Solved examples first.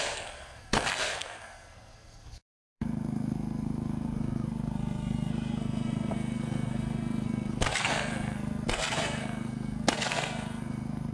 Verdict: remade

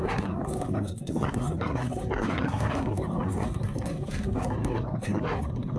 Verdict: remade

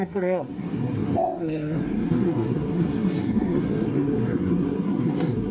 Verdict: remade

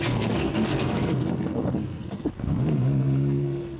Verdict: remade